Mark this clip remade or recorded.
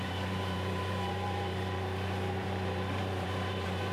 remade